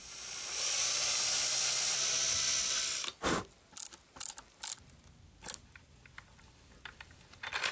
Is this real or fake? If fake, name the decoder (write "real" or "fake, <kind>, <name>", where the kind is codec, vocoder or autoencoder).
real